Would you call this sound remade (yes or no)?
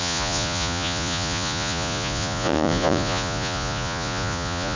yes